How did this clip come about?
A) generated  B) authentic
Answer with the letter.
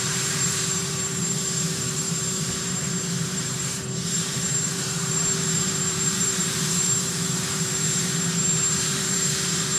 A